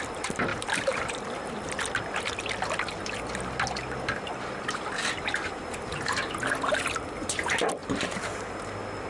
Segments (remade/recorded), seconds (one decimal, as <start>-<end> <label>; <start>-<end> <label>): 0.0-0.5 recorded; 0.5-1.2 remade; 1.2-7.8 recorded; 7.8-8.4 remade; 8.4-9.1 recorded